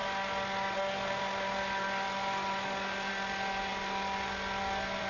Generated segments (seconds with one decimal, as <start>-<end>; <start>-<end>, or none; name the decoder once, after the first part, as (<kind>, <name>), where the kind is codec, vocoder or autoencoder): none